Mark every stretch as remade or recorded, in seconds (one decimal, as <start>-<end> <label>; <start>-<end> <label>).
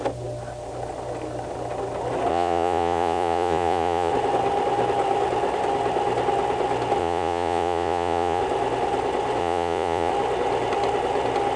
0.0-2.3 recorded; 2.3-4.1 remade; 4.1-7.0 recorded; 7.0-8.4 remade; 8.4-9.4 recorded; 9.4-10.1 remade; 10.1-11.6 recorded